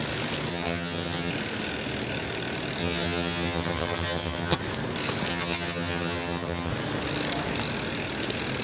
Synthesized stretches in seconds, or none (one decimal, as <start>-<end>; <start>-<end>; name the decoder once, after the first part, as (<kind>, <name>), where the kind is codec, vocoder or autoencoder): 0.5-1.3 (vocoder, HiFi-GAN); 2.8-4.6; 5.3-6.7